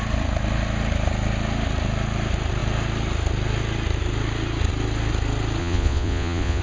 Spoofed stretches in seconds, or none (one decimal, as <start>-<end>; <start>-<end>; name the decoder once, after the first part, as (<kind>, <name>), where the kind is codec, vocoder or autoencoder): 5.6-6.6 (vocoder, Vocos)